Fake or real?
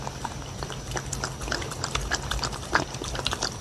fake